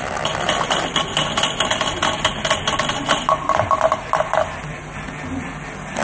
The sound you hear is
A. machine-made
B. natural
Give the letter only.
B